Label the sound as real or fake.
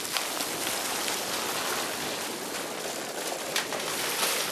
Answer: real